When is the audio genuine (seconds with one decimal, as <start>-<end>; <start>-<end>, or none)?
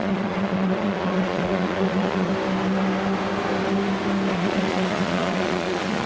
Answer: 2.3-4.3